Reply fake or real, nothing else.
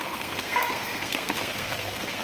fake